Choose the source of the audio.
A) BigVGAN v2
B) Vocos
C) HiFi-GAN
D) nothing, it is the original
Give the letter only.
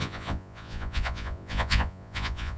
B